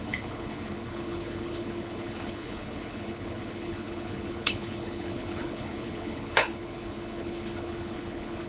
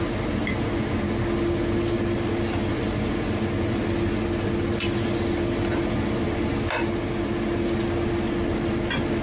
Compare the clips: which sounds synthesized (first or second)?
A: first